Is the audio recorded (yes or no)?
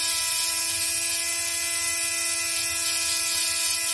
yes